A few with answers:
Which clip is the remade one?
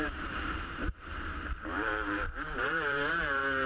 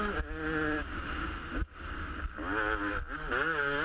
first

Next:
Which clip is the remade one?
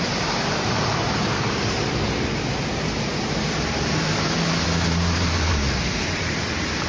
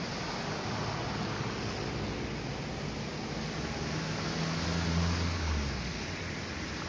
first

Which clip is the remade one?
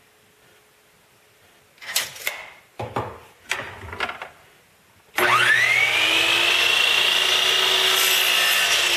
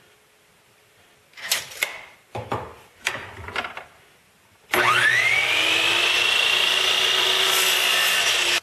second